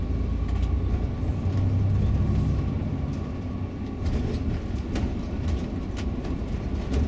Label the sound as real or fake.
real